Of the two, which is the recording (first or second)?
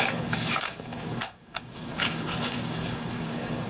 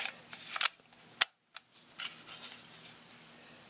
second